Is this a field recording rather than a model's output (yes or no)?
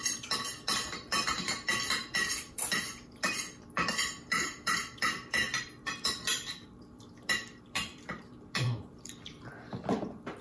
no